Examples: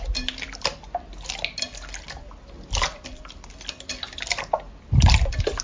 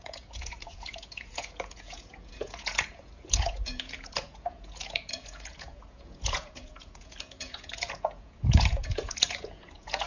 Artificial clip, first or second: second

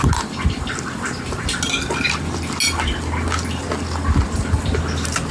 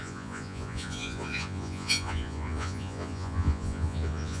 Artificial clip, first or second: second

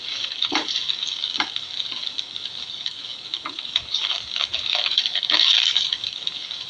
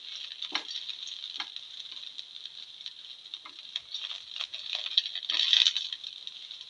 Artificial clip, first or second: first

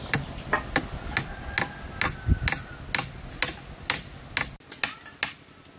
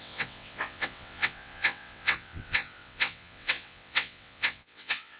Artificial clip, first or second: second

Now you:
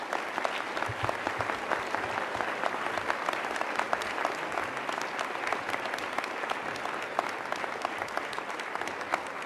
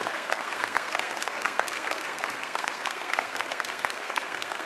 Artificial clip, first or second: second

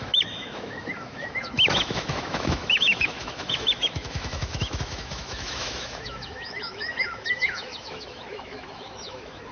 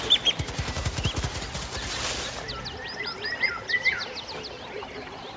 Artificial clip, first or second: first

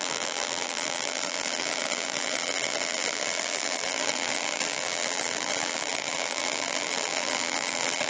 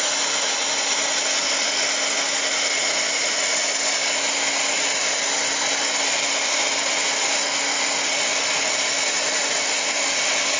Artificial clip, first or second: first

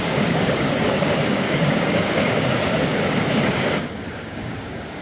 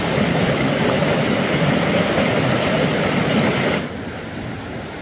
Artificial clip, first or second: first